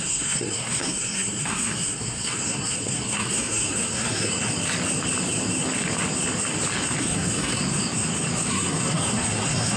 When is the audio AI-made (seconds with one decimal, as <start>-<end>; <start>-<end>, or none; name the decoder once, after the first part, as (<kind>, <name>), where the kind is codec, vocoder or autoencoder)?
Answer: 0.0-4.5 (codec, SNAC); 7.0-7.6; 8.5-9.8